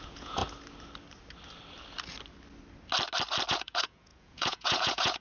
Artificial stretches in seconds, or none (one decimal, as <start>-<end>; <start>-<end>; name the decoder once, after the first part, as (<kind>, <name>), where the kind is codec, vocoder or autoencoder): 0.0-0.4 (vocoder, Vocos); 3.5-5.2